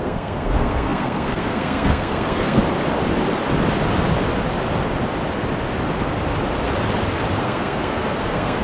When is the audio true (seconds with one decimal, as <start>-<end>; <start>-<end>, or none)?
2.6-7.4